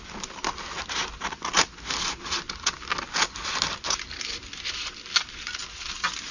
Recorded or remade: recorded